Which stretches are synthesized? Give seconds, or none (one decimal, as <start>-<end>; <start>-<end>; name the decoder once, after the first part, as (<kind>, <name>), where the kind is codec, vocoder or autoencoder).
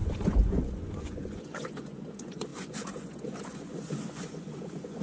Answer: 0.0-5.0 (vocoder, Vocos)